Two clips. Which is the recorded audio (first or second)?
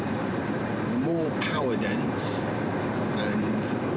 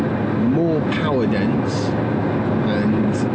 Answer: second